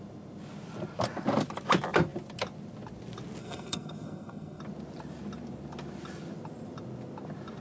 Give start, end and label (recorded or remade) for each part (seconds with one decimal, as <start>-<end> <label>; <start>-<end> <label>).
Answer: 0.0-3.4 recorded; 3.4-4.6 remade; 4.6-7.6 recorded